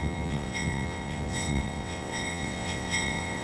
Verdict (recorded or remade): remade